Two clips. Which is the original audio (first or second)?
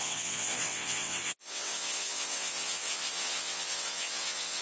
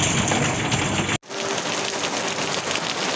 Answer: second